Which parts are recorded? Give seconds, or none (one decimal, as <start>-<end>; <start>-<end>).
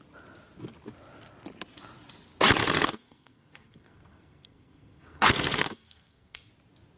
0.0-2.6; 6.5-7.0